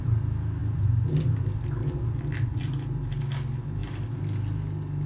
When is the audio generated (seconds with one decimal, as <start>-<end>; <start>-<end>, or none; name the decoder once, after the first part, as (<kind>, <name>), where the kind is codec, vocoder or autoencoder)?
none